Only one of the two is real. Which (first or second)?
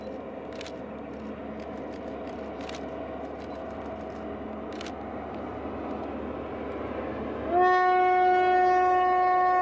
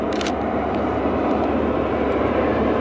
first